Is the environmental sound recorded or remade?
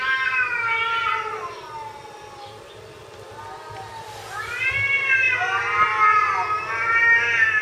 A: recorded